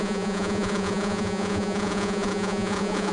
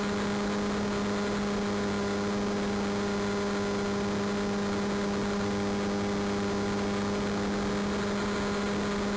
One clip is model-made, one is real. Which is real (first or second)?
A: second